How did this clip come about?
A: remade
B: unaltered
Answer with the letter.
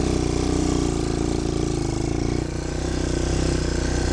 B